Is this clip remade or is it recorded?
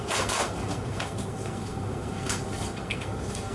remade